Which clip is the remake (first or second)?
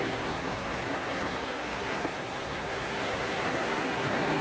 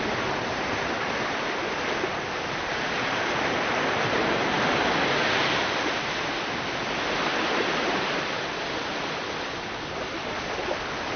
first